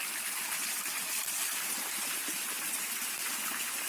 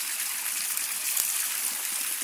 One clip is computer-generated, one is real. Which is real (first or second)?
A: first